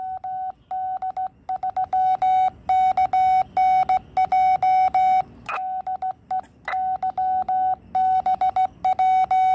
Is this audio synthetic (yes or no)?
no